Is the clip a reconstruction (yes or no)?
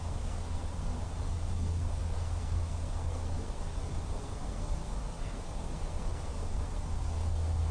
yes